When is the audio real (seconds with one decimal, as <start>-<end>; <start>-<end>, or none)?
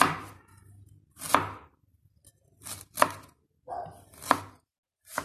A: 0.0-5.2